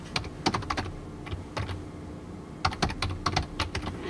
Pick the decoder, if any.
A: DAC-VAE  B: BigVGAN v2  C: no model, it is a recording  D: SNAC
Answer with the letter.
C